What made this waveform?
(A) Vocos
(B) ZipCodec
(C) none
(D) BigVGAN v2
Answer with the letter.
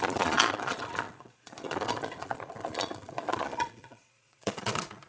A